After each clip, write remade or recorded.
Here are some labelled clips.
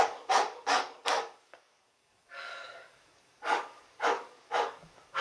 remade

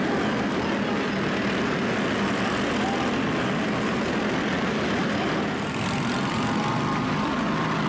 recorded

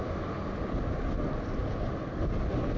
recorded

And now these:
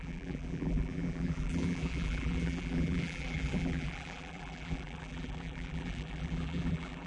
remade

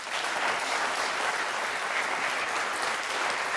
recorded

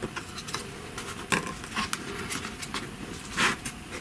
recorded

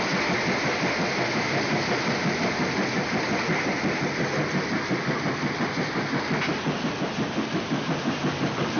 recorded